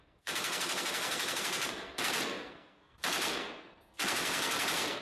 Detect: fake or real fake